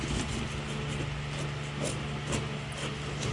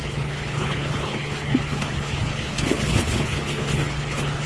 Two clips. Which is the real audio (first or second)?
first